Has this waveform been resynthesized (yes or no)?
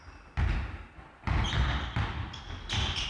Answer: no